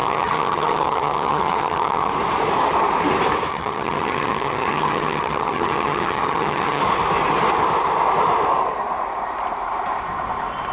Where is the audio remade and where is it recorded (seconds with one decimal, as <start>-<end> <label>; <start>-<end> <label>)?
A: 0.0-2.1 remade; 2.1-3.5 recorded; 3.5-6.8 remade; 6.8-10.7 recorded